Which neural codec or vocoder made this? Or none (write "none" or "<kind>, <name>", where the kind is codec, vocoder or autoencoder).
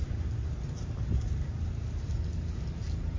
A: none